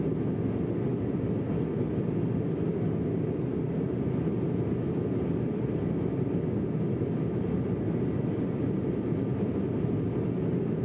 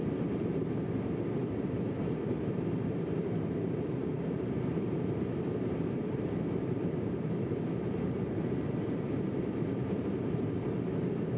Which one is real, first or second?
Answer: first